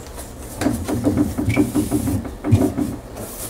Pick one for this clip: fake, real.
real